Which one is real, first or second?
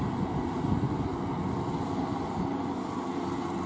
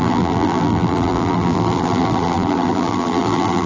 first